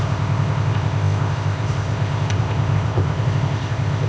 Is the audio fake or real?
fake